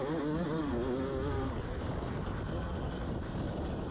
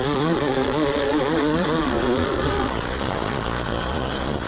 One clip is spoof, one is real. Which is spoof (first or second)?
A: second